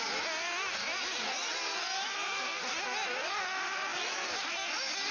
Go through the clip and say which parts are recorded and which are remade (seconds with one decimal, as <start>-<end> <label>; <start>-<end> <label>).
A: 0.0-5.1 recorded